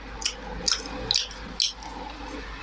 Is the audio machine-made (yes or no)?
no